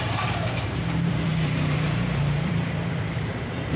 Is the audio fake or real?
fake